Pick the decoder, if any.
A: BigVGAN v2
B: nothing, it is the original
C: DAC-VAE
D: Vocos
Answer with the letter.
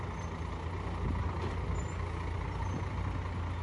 B